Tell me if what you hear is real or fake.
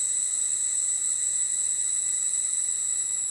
real